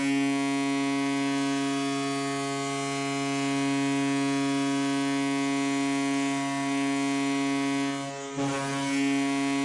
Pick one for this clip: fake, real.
real